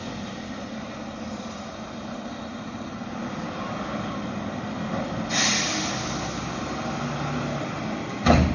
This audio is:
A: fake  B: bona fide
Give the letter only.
B